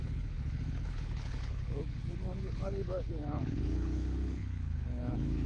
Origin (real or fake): fake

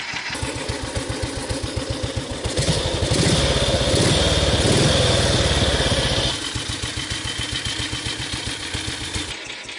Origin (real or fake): real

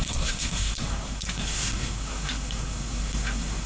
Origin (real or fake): fake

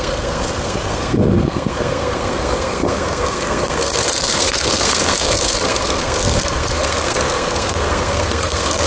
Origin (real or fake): fake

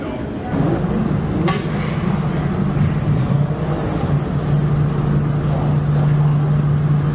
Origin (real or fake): real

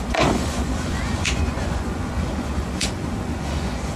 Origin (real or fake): fake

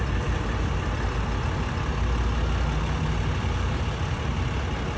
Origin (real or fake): real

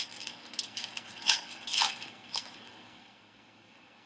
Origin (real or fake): fake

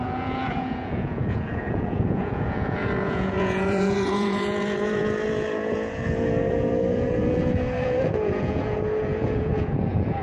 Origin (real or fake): fake